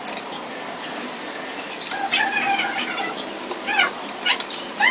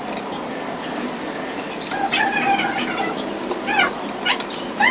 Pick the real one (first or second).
second